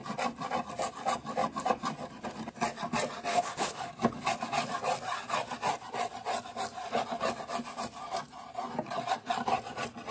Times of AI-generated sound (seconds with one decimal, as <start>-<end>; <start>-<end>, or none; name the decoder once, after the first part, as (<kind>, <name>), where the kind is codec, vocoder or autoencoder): 3.3-3.9 (autoencoder, DAC-VAE)